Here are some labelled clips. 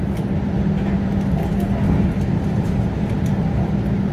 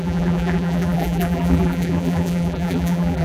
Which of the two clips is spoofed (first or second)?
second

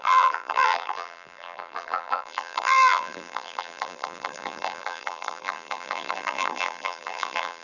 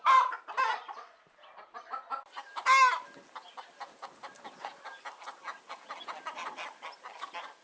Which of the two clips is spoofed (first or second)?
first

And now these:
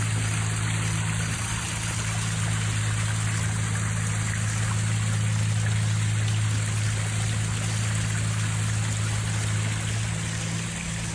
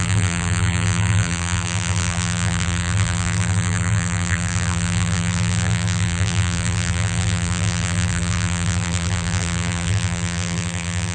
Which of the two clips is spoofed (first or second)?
second